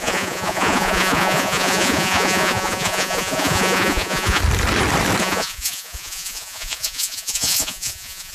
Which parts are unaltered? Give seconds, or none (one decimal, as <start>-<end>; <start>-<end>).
4.4-5.2